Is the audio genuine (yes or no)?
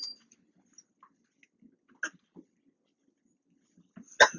yes